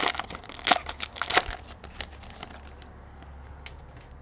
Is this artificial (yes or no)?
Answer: no